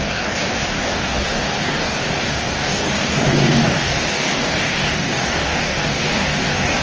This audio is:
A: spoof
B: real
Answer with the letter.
A